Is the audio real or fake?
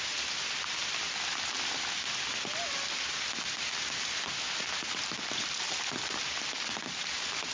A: real